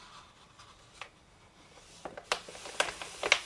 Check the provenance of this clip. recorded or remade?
recorded